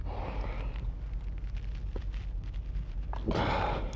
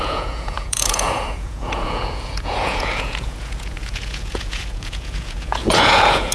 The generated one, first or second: second